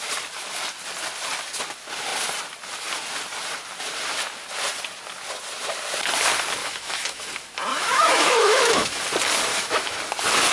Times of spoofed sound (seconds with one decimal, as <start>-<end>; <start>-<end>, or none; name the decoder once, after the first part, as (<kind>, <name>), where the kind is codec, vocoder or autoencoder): 6.6-7.2 (autoencoder, DAC-VAE); 7.7-9.0; 9.5-10.0

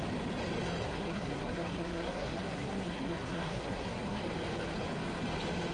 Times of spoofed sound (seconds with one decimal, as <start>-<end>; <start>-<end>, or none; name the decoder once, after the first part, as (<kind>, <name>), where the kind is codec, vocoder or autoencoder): 0.8-4.2 (codec, SNAC)

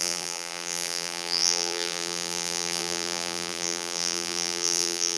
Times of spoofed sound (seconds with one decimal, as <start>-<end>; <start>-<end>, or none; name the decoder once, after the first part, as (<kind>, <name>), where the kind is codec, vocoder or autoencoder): 0.0-5.2 (vocoder, BigVGAN v2)

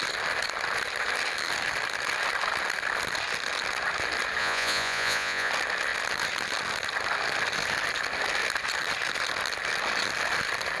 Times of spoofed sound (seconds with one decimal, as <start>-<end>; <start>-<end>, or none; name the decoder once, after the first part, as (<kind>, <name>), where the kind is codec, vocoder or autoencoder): 4.4-5.5 (vocoder, Vocos)